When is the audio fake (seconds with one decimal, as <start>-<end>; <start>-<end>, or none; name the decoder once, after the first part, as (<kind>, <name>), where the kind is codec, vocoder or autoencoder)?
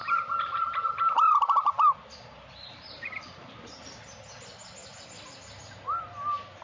0.0-4.0 (vocoder, BigVGAN v2)